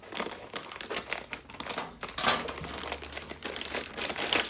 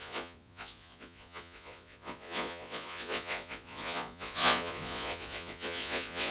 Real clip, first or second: first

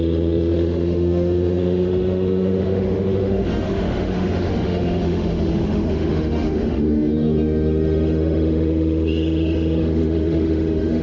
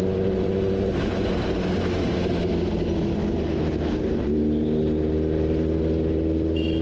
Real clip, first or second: second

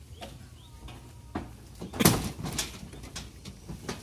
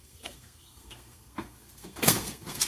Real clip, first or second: first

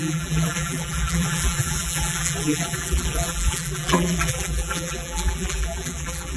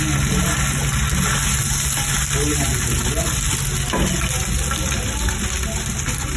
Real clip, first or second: second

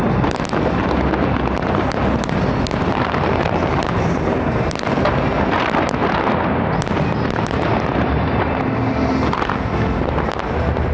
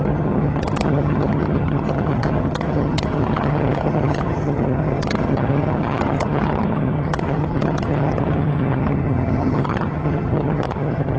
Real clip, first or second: first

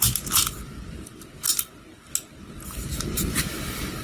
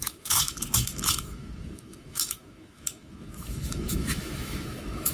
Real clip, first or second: first